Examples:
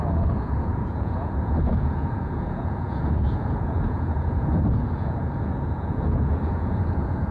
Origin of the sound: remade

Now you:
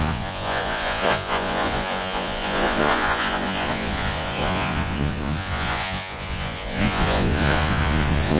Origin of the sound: remade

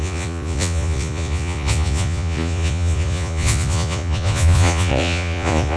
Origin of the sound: remade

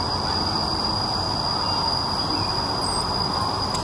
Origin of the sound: recorded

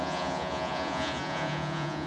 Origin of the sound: remade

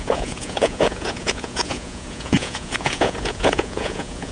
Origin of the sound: remade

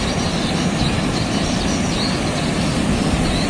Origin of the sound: recorded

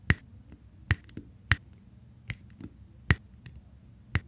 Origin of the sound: recorded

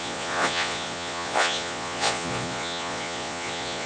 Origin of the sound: remade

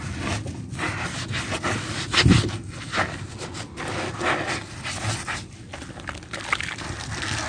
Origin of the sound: recorded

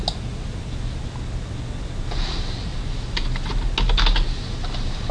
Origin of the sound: recorded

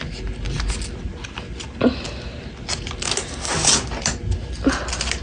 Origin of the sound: recorded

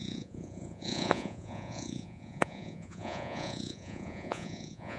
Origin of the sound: remade